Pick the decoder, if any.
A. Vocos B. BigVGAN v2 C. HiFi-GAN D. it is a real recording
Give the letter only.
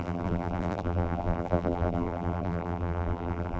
B